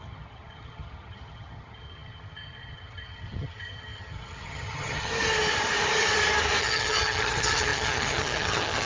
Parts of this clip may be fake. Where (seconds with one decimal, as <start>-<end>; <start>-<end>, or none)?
0.0-5.1; 6.6-8.9